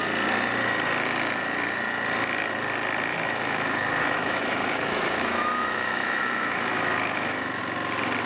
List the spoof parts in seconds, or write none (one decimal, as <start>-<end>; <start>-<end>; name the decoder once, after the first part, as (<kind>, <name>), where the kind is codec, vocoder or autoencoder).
3.1-7.6 (autoencoder, DAC-VAE)